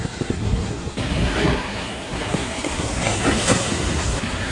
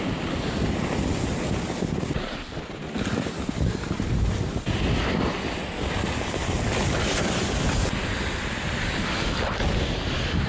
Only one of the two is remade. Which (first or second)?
first